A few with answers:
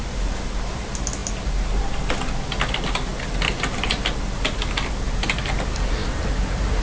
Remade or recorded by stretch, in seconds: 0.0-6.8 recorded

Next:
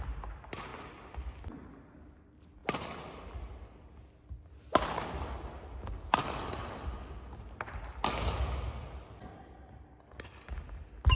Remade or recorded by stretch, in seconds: 0.0-11.1 recorded

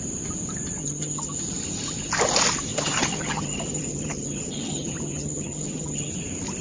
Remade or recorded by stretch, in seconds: 0.0-0.8 recorded; 0.8-1.4 remade; 1.4-2.7 recorded; 2.7-6.1 remade; 6.1-6.6 recorded

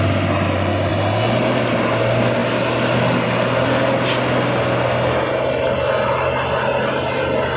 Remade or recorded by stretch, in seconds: 0.0-7.6 recorded

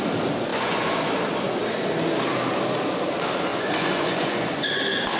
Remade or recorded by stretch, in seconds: 0.0-0.5 recorded; 0.5-1.1 remade; 1.1-3.5 recorded; 3.5-4.8 remade; 4.8-5.2 recorded